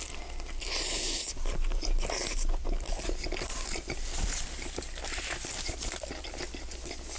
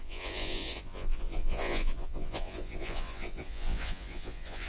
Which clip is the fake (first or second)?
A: second